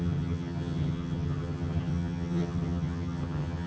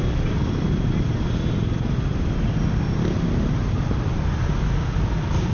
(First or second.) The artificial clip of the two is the first